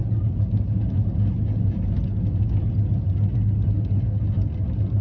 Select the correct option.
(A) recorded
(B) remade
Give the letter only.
A